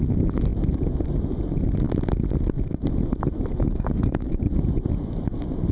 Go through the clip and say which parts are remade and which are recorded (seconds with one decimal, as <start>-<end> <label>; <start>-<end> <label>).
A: 0.0-3.6 recorded; 3.6-4.4 remade; 4.4-5.7 recorded